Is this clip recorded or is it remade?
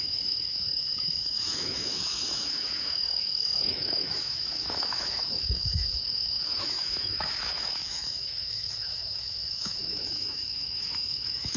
remade